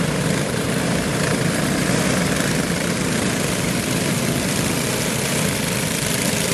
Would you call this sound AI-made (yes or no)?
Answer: yes